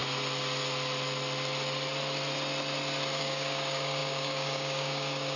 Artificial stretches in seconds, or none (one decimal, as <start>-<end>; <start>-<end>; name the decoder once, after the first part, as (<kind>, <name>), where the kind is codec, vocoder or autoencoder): 3.2-5.4 (codec, DAC)